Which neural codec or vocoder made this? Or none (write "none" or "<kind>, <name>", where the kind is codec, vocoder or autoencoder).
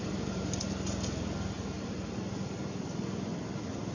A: none